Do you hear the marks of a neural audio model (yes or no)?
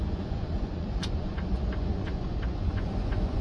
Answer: yes